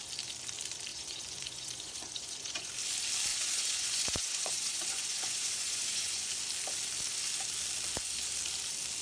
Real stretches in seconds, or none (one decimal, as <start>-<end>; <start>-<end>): 0.0-0.9; 2.7-3.3; 6.3-9.0